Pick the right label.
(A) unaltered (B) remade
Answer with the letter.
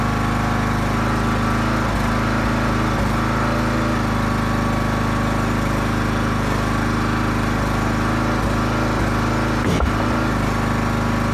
A